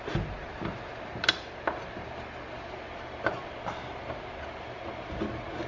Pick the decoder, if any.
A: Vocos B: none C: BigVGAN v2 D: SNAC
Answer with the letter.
B